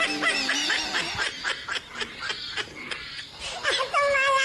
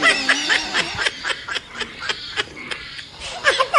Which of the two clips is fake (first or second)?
second